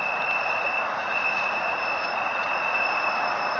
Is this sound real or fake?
fake